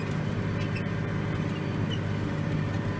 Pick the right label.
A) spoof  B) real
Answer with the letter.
B